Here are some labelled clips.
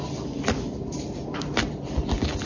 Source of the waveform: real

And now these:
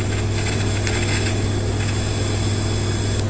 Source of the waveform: real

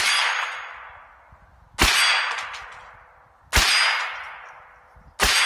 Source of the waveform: real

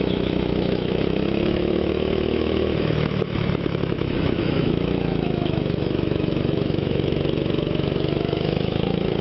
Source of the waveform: fake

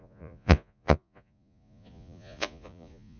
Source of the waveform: fake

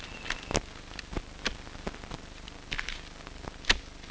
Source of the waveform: real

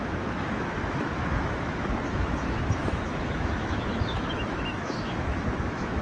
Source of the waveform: fake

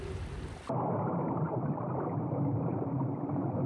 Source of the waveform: real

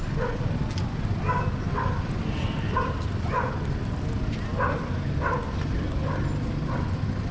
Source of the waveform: real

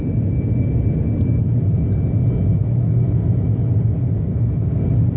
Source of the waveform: real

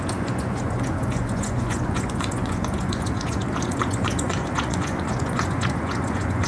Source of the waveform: fake